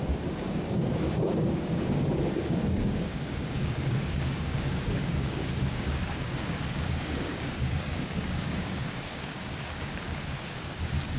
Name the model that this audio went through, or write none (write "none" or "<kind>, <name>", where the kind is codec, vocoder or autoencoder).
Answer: codec, DAC